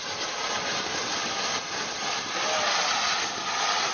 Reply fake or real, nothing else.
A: real